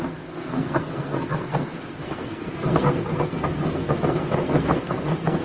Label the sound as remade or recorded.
remade